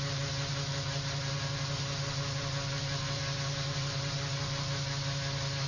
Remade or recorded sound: recorded